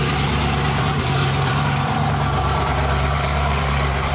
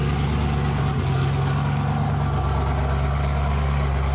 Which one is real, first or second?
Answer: second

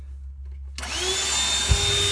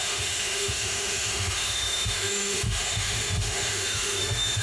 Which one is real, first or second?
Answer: first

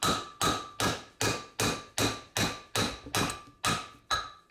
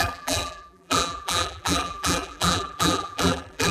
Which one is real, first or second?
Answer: first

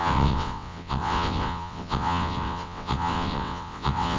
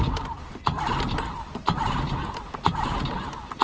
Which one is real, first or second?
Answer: second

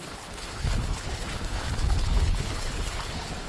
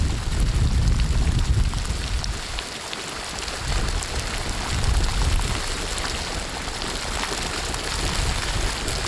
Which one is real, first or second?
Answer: second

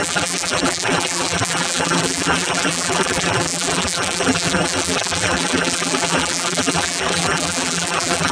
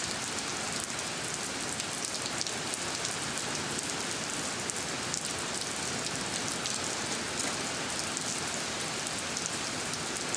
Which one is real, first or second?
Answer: second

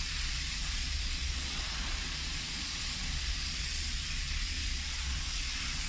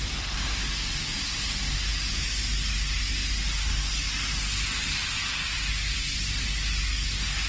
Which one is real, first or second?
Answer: second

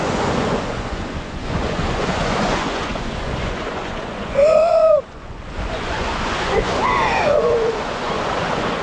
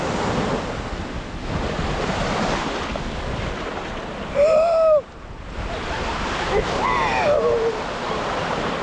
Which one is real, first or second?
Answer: second